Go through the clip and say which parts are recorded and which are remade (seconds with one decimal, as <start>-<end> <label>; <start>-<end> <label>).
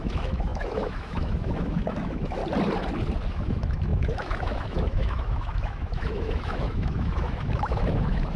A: 0.0-2.4 remade; 2.4-3.3 recorded; 3.3-8.4 remade